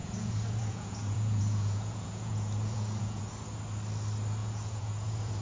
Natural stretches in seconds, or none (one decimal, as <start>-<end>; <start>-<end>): 3.2-4.4